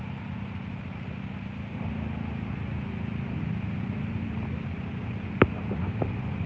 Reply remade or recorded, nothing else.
recorded